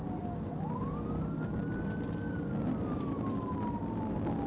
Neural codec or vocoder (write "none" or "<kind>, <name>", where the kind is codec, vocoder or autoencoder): none